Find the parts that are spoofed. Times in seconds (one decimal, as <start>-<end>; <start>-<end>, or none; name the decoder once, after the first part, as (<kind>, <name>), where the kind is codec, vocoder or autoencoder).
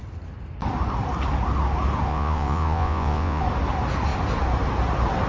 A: 2.1-3.4 (vocoder, Vocos)